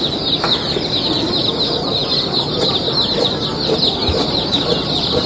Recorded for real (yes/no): yes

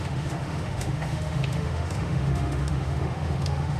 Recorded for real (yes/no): no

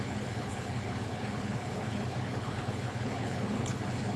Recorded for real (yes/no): no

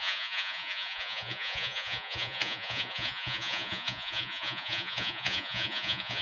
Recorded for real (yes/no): no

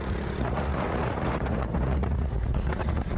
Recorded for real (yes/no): no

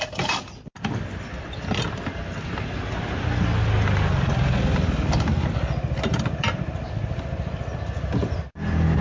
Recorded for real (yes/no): yes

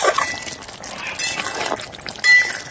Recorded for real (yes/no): yes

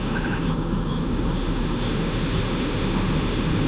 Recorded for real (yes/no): no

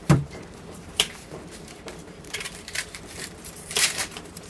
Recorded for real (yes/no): no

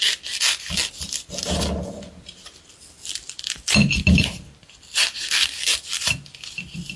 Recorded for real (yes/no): yes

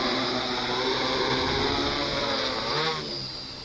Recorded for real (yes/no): yes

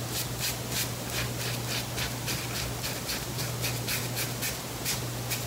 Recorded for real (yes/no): yes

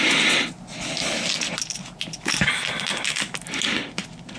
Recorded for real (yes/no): yes